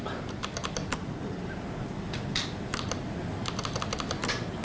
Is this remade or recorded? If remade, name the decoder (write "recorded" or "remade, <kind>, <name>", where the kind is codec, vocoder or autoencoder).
recorded